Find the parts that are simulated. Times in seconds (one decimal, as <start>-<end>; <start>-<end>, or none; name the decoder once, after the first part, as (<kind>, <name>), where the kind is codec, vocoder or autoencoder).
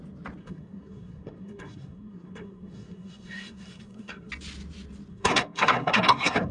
0.4-4.3 (codec, SNAC); 5.1-6.5